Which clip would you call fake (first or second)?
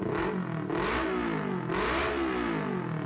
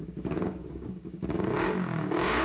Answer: second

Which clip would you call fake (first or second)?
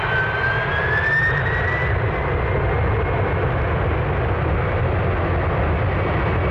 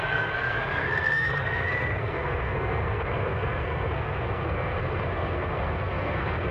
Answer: second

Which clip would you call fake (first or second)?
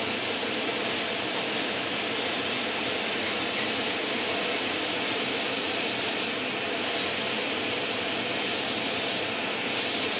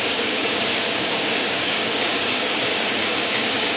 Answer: second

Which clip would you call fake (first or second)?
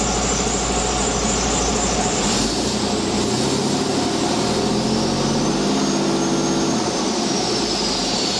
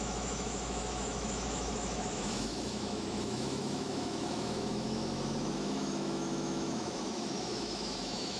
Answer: second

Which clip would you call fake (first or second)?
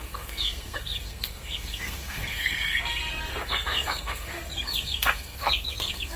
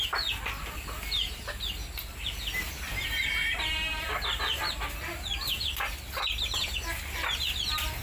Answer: first